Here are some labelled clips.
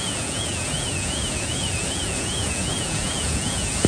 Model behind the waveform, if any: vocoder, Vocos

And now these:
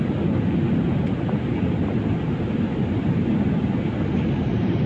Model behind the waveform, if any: none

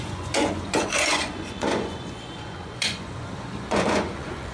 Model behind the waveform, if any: vocoder, Vocos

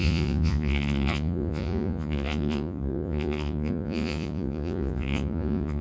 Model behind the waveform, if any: vocoder, Vocos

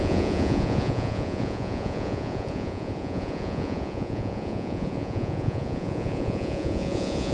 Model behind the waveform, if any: vocoder, Vocos